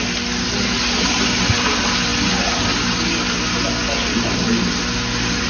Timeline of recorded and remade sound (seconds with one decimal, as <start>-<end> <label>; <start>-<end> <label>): 0.0-5.5 recorded